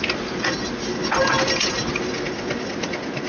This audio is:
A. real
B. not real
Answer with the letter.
A